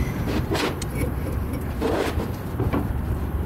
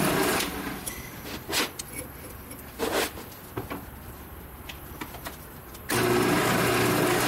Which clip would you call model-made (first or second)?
first